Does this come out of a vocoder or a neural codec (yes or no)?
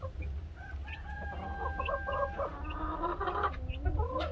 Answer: no